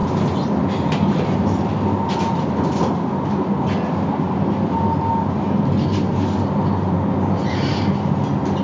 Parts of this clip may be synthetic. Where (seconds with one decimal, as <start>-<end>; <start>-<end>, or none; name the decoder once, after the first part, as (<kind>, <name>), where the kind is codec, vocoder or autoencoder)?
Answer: none